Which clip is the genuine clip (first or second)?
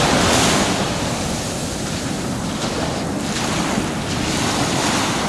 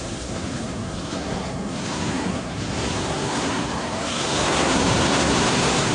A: first